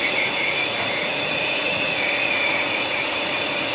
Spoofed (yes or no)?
yes